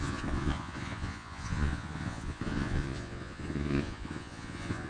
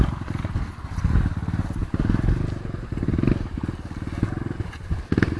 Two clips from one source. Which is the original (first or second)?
second